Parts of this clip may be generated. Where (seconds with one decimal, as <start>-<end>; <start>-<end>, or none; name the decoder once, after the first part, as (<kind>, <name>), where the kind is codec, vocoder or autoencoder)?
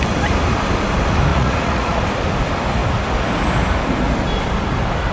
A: 1.3-2.0 (vocoder, Vocos)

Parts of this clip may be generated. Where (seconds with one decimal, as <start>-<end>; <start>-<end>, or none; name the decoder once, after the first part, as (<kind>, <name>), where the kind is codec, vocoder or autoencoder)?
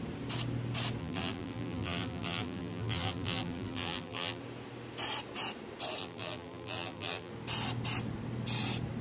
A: 1.0-4.4 (vocoder, BigVGAN v2); 6.0-7.3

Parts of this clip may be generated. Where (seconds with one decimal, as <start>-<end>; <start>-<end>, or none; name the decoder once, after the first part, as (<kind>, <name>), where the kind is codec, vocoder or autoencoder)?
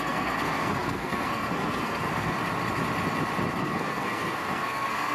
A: 0.0-2.4 (codec, SNAC); 3.6-5.1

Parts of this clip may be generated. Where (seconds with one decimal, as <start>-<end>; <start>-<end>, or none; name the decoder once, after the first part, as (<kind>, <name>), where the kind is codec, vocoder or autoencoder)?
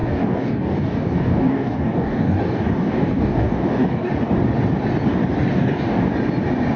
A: 0.0-4.1 (codec, DAC); 5.5-6.1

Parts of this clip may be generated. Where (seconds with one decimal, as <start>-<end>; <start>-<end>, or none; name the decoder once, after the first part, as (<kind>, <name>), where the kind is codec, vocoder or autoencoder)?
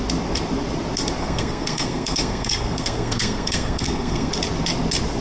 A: 1.2-4.3 (codec, SNAC)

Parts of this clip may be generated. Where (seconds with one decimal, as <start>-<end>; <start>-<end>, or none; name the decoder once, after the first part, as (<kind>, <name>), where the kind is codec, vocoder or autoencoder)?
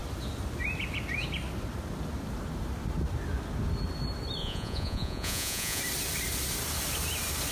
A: 4.4-5.8 (vocoder, Vocos)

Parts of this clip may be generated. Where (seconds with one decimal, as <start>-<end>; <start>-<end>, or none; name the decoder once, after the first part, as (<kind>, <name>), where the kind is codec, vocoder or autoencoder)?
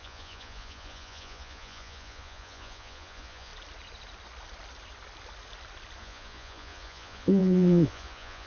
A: 0.0-3.5 (vocoder, Vocos); 6.0-8.5